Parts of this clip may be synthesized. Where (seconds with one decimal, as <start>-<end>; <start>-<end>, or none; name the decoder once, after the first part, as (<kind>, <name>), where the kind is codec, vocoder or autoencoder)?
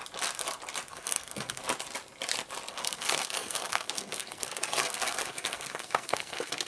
0.9-1.6 (codec, SNAC); 2.7-6.7